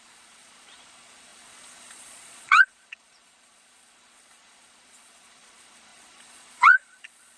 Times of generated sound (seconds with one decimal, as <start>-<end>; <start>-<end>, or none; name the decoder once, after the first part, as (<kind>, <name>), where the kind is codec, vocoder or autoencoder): 0.0-7.4 (vocoder, Vocos)